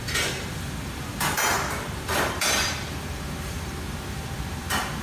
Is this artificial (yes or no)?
yes